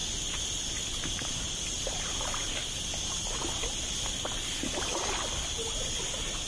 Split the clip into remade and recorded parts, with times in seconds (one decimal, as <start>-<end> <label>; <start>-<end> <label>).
0.0-6.5 recorded

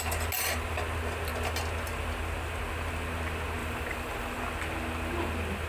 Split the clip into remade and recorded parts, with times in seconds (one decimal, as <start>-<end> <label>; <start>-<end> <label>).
0.0-3.6 recorded; 3.6-4.4 remade; 4.4-5.7 recorded

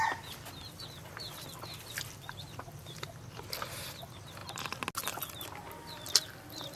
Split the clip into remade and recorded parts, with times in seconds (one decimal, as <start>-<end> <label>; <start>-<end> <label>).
0.0-6.8 recorded